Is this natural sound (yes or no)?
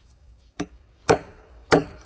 no